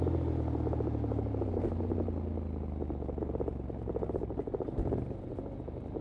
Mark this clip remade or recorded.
recorded